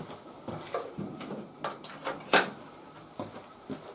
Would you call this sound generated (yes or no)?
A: no